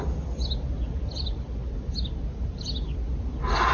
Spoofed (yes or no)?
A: no